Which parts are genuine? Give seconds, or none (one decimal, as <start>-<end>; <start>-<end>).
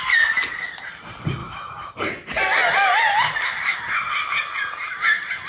0.0-1.4; 2.0-5.5